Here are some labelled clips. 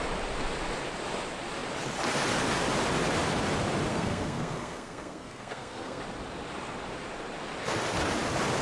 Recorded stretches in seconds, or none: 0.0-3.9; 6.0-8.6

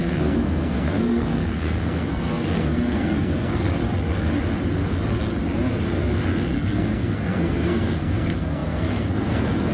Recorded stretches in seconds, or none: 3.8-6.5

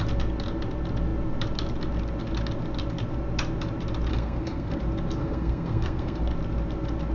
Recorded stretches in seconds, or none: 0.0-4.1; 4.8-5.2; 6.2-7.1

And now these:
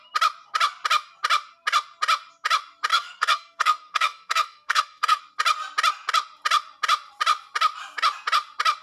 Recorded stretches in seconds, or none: 0.0-2.9; 5.2-8.8

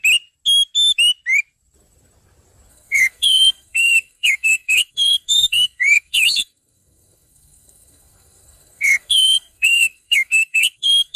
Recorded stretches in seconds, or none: 0.0-2.7